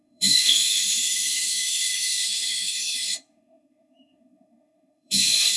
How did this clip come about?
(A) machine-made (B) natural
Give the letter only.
A